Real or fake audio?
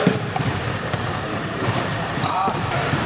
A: fake